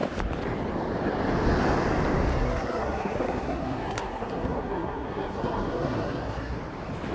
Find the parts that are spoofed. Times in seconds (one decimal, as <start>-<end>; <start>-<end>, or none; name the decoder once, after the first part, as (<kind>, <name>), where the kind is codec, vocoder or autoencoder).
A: 2.3-6.6 (codec, SNAC)